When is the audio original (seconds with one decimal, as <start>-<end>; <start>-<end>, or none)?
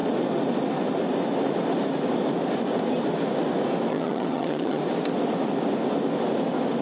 0.0-3.9; 4.8-6.8